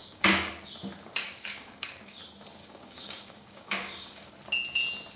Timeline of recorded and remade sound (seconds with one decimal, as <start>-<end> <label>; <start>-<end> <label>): 0.0-0.5 remade; 0.5-1.2 recorded; 1.2-2.2 remade; 2.2-2.6 recorded; 2.6-4.3 remade; 4.3-5.2 recorded